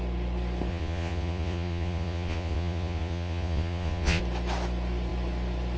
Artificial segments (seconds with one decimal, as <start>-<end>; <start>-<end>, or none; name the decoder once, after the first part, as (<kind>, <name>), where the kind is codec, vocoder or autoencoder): 0.7-4.2 (vocoder, Vocos)